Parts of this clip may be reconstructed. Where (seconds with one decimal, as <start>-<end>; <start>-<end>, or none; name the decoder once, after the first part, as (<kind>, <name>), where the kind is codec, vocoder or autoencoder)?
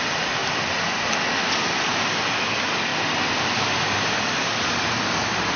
0.0-0.4 (vocoder, BigVGAN v2); 2.3-5.6